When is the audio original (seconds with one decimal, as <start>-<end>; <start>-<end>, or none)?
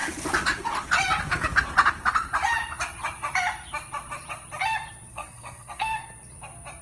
0.0-5.1; 6.0-6.8